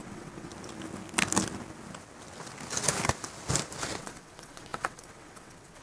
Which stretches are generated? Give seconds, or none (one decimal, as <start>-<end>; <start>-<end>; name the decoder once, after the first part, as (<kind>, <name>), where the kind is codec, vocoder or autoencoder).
0.0-0.5 (vocoder, WaveNeXt); 4.0-5.8